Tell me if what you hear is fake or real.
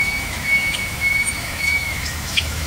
fake